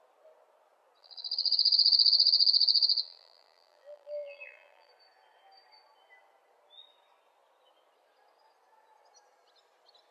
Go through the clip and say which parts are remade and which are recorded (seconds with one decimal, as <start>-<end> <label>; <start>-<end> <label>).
0.0-1.0 recorded; 1.0-4.9 remade; 4.9-10.1 recorded